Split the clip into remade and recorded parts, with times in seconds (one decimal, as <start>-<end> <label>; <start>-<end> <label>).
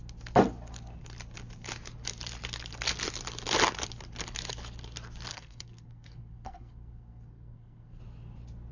0.0-5.3 recorded; 5.3-8.0 remade; 8.0-8.7 recorded